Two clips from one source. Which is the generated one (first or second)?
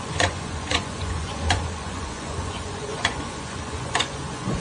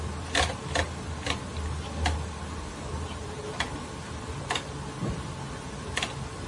first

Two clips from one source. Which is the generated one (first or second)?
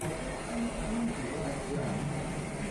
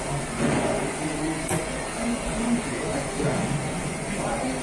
second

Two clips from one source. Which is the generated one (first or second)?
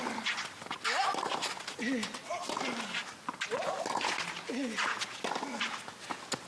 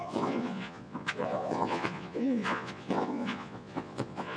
second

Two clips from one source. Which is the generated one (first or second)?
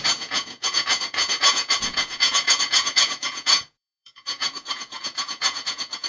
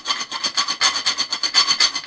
first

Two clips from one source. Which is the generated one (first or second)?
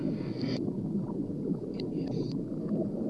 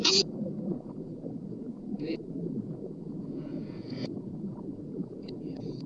second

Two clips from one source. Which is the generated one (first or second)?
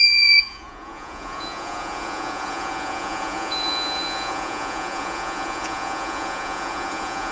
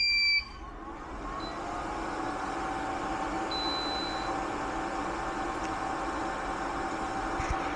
first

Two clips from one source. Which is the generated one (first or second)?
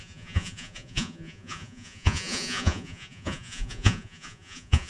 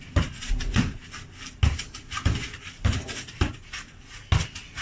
first